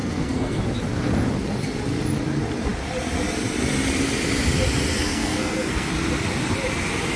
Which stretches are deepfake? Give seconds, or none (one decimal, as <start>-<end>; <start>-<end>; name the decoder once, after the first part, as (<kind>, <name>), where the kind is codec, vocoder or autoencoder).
0.0-0.6 (codec, SNAC); 5.1-5.9